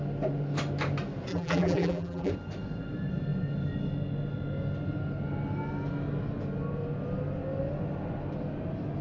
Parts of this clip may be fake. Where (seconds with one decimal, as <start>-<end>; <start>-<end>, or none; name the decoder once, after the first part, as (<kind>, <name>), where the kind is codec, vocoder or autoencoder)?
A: 1.3-2.3 (vocoder, BigVGAN v2)